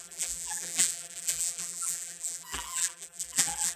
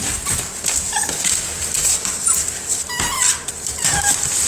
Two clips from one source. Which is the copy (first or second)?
first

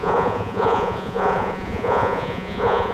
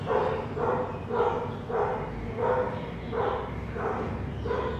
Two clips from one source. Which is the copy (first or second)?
first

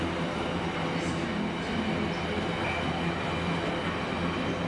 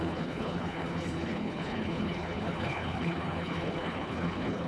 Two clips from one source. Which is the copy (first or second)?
second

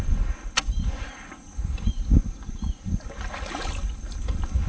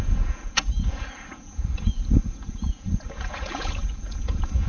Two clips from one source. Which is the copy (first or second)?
second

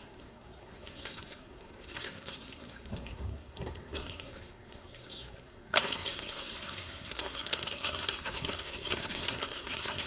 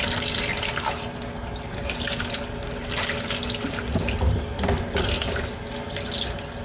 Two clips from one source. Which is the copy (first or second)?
first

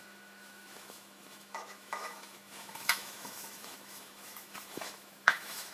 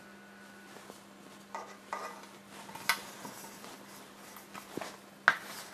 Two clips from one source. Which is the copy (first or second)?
first